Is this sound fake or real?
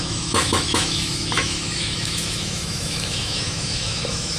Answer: fake